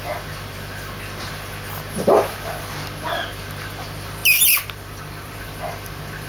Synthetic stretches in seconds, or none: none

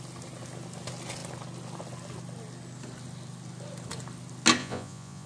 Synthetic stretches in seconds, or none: 4.6-5.3 (vocoder, Vocos)

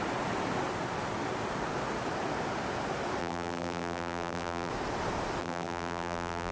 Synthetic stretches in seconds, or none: 3.2-4.7 (vocoder, BigVGAN v2); 5.4-6.5

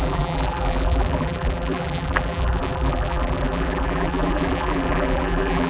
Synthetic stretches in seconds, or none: 0.0-5.7 (vocoder, BigVGAN v2)

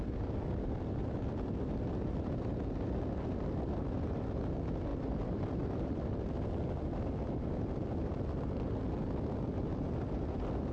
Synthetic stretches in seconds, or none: 4.9-5.6 (vocoder, BigVGAN v2)